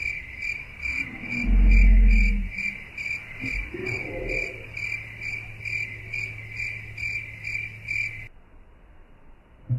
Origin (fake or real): real